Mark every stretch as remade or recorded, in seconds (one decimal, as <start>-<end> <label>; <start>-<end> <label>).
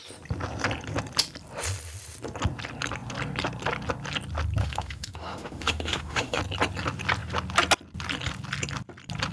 0.0-4.6 recorded; 4.6-6.4 remade; 6.4-9.3 recorded